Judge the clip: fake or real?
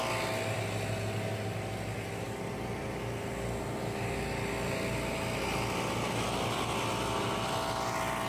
real